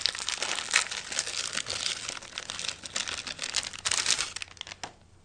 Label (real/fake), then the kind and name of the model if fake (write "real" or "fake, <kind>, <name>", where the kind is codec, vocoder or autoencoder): real